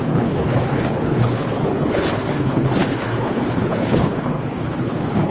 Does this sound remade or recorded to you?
remade